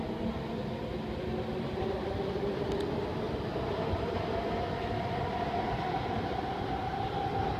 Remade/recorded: recorded